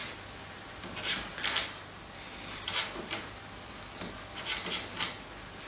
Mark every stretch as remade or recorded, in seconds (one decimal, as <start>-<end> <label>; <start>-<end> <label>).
0.0-5.7 recorded